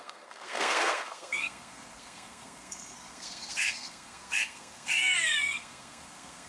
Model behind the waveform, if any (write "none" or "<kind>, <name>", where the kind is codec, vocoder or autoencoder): codec, SNAC